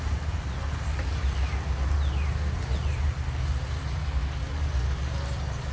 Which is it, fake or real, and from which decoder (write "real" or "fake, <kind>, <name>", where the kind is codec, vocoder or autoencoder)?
real